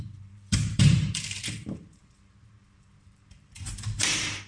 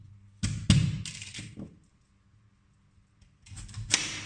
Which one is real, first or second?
second